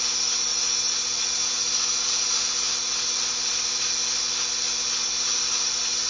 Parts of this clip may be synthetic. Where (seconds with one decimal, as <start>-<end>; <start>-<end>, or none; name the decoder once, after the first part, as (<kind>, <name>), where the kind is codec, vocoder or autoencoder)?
none